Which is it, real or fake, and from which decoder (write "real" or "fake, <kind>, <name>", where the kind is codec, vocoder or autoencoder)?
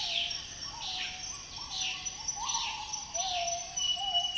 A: fake, vocoder, BigVGAN v2